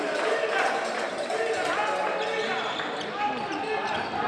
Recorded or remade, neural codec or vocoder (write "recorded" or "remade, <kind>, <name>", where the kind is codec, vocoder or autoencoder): remade, vocoder, BigVGAN v2